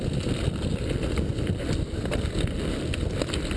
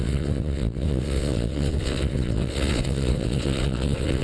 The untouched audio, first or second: first